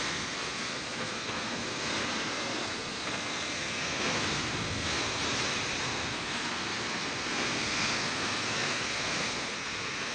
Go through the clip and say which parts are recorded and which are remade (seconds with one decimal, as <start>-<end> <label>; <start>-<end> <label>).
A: 0.0-5.2 remade; 5.2-5.8 recorded; 5.8-10.1 remade